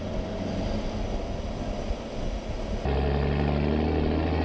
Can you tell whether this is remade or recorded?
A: recorded